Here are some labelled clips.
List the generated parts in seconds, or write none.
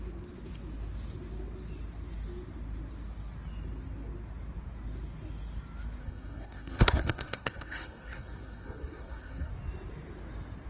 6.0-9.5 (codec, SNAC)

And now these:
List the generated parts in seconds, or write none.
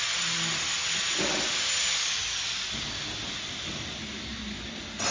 none